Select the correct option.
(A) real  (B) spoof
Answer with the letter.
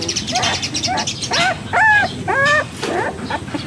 A